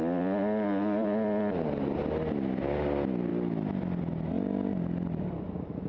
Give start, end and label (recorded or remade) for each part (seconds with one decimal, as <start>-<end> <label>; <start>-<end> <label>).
0.0-5.9 recorded